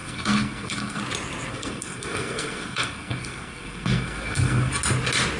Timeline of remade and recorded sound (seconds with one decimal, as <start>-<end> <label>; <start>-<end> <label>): 0.0-1.0 remade; 1.0-1.5 recorded; 1.5-4.7 remade; 4.7-5.4 recorded